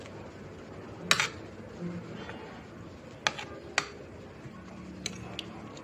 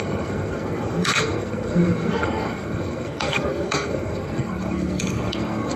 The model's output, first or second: second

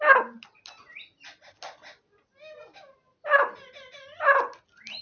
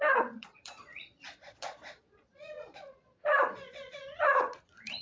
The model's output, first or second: second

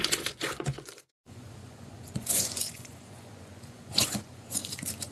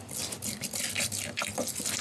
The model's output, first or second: first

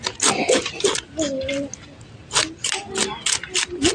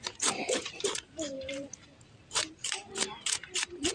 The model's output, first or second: second